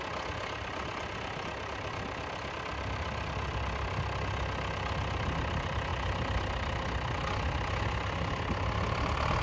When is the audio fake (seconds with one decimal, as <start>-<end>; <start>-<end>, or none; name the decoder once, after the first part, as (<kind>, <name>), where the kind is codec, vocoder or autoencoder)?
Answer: none